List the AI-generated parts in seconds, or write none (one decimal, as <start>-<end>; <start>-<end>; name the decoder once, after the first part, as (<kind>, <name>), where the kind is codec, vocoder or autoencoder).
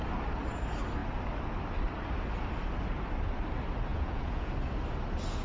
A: 3.9-4.5 (vocoder, Vocos)